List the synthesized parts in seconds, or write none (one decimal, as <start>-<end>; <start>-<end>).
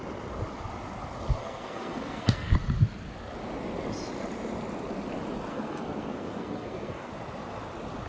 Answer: 1.4-2.5; 5.5-7.1